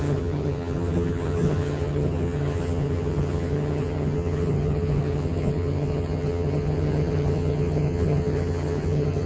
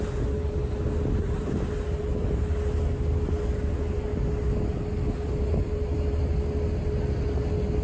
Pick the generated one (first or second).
first